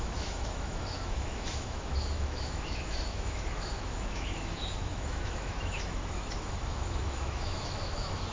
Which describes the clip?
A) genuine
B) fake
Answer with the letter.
B